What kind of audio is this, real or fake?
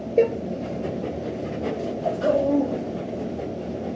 real